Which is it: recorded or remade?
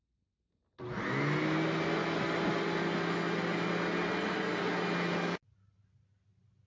recorded